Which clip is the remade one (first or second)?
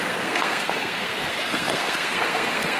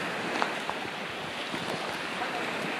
first